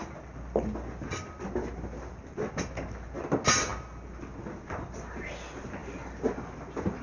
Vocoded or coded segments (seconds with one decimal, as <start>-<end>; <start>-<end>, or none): none